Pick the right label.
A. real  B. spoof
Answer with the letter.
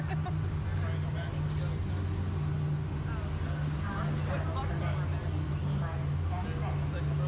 A